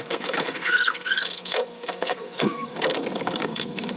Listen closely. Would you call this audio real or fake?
fake